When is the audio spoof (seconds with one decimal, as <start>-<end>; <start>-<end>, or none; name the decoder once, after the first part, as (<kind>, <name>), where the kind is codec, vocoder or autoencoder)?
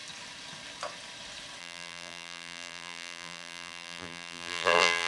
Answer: 1.6-5.1 (vocoder, BigVGAN v2)